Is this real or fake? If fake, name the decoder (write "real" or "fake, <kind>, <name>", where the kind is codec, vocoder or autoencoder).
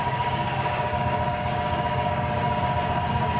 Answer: fake, codec, DAC